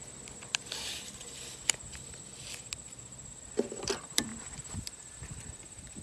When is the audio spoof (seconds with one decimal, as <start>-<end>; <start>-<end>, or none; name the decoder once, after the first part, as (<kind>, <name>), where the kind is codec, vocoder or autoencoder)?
0.0-1.2 (vocoder, BigVGAN v2); 3.6-4.3; 5.3-6.0

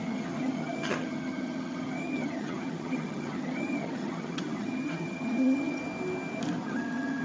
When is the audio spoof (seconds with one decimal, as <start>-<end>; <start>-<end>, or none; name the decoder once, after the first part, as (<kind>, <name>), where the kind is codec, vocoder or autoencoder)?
0.0-5.8 (vocoder, HiFi-GAN); 6.6-7.2

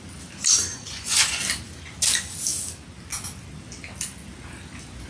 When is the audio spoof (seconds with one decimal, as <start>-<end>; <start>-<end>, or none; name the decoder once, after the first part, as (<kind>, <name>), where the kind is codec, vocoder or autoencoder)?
0.6-1.4 (vocoder, Vocos)

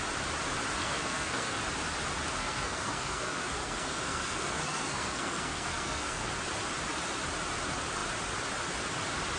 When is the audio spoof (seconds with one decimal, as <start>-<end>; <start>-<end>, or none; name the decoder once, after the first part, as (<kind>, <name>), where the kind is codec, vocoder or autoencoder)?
0.8-1.6 (codec, SNAC); 2.4-6.3

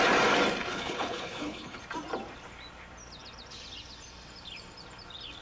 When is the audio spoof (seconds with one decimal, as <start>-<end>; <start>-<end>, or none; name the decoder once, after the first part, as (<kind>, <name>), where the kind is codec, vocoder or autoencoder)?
0.7-1.8 (codec, HILCodec)

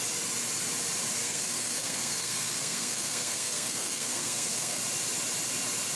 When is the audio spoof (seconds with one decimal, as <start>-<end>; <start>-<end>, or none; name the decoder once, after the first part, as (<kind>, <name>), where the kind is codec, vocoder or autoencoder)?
1.2-4.8 (codec, SNAC)

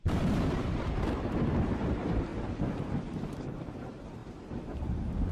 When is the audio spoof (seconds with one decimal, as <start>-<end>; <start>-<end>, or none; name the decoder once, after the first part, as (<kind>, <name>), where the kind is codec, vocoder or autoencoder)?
0.0-2.3 (vocoder, BigVGAN v2); 3.7-5.3

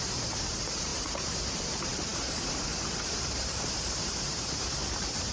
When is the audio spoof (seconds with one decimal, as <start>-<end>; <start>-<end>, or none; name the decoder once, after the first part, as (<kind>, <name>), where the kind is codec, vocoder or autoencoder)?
0.0-5.3 (vocoder, BigVGAN v2)